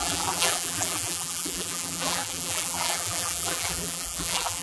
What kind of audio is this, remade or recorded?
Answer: remade